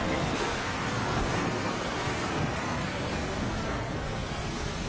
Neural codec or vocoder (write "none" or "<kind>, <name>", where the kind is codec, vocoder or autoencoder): codec, SNAC